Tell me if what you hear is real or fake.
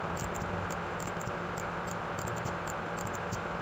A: real